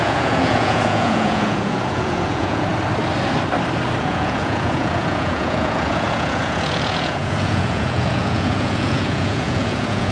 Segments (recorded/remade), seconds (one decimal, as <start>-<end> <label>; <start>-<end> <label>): 0.0-2.7 remade; 2.7-4.0 recorded; 4.0-10.1 remade